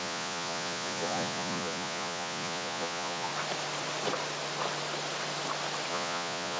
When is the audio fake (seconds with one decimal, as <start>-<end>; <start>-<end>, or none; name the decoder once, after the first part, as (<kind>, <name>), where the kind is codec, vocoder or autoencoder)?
0.0-3.3 (vocoder, Vocos); 5.9-6.6